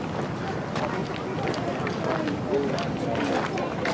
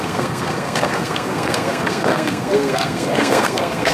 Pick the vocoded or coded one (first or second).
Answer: second